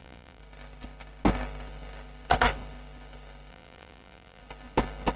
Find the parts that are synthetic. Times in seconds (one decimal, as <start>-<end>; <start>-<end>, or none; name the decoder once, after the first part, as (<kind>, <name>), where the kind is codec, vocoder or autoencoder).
0.0-0.4 (vocoder, BigVGAN v2); 3.5-4.4